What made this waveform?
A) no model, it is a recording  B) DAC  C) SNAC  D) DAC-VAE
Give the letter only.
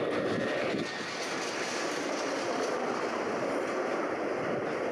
A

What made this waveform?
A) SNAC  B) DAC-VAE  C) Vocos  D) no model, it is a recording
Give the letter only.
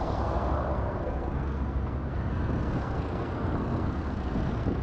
A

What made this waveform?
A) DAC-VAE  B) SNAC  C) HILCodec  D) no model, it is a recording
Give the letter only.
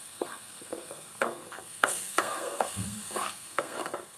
B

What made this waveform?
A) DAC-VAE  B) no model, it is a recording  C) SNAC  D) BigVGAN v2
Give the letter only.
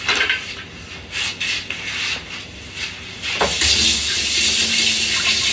B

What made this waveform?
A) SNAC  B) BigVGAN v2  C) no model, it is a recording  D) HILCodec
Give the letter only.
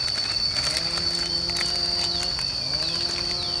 C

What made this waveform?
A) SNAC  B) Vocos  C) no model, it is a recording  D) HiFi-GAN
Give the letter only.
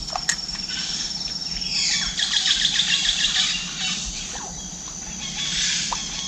C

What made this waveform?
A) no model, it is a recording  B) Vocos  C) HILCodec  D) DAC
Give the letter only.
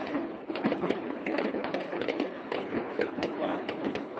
C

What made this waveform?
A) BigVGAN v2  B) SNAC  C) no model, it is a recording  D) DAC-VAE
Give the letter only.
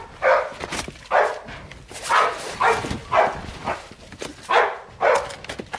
C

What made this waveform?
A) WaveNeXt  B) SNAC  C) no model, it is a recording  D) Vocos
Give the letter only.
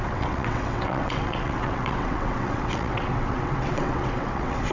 A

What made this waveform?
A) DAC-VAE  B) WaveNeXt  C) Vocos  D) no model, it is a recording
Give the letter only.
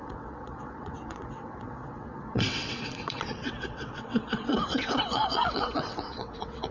B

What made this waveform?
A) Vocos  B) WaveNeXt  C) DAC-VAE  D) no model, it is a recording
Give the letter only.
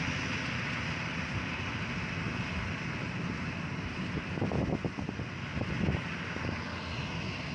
D